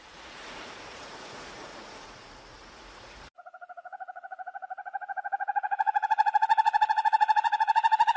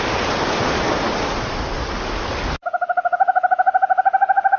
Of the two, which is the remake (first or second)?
first